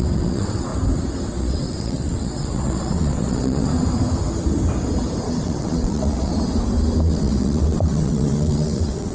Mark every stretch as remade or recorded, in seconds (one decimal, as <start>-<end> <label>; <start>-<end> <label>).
0.0-0.7 remade; 0.7-1.4 recorded; 1.4-3.7 remade; 3.7-5.4 recorded; 5.4-6.3 remade; 6.3-7.0 recorded; 7.0-9.1 remade